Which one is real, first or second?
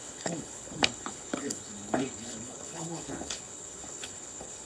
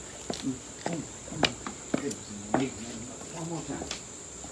second